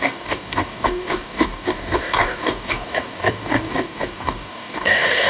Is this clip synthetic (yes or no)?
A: yes